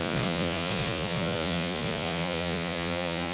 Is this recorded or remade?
remade